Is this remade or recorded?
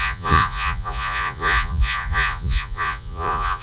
remade